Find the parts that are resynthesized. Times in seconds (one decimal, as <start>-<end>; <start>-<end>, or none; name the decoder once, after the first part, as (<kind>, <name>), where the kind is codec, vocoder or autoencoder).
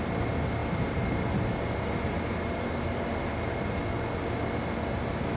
0.6-3.8 (vocoder, BigVGAN v2)